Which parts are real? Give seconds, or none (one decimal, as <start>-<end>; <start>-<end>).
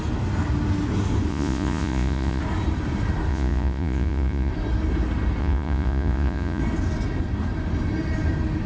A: 0.0-1.3; 2.4-3.3; 4.5-5.4; 6.6-8.7